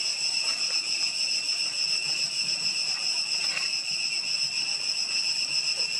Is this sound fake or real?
real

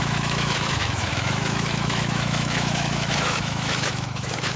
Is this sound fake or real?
fake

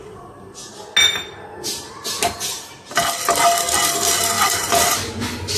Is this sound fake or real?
real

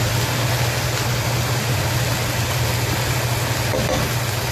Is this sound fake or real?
real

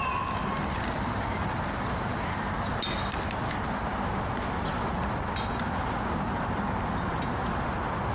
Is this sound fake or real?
real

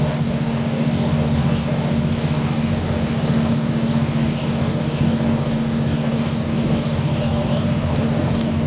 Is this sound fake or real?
fake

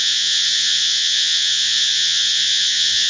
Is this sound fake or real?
fake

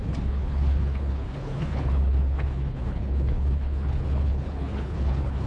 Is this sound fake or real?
fake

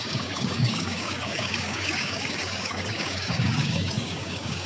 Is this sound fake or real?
fake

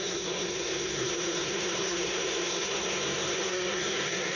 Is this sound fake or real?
fake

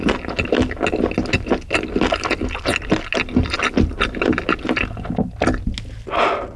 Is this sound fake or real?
real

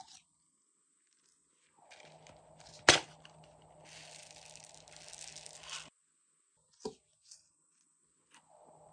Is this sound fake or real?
real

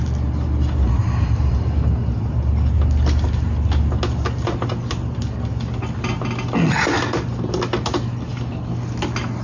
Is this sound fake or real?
real